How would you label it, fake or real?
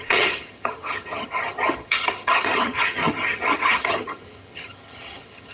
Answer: fake